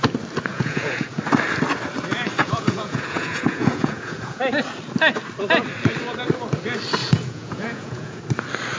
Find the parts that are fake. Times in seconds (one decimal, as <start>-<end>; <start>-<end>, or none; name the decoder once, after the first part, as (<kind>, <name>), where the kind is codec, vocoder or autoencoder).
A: 0.5-1.2 (vocoder, Vocos); 2.4-4.4; 7.0-8.2